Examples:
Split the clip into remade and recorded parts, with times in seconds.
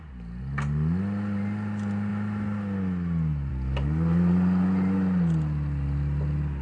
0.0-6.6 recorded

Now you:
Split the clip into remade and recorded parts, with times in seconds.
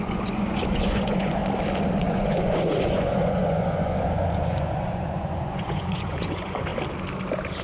0.0-1.4 remade; 1.4-2.0 recorded; 2.0-6.7 remade; 6.7-7.6 recorded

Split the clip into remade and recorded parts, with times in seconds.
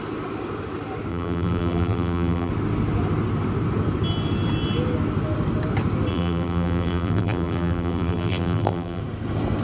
0.0-1.1 recorded; 1.1-2.5 remade; 2.5-6.1 recorded; 6.1-9.0 remade; 9.0-9.6 recorded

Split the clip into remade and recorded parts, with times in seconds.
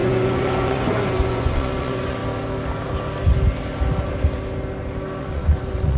0.0-2.2 remade; 2.2-5.2 recorded; 5.2-6.0 remade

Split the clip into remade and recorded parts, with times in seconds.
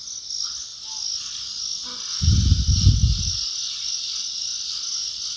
0.0-5.4 recorded